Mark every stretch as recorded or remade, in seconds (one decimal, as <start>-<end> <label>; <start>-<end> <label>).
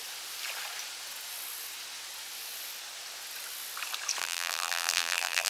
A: 0.0-4.2 recorded; 4.2-5.5 remade